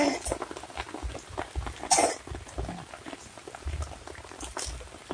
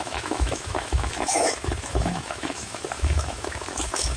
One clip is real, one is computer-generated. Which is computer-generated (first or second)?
second